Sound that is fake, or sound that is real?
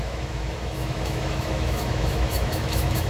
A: fake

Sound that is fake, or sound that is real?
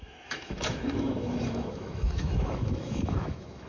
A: fake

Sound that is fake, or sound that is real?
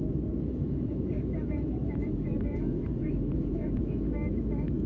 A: fake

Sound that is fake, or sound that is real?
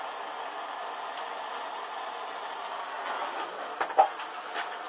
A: real